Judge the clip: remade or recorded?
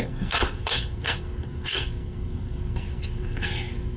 remade